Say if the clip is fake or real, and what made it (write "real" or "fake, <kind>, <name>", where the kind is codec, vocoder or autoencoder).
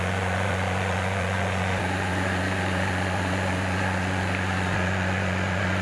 fake, vocoder, Vocos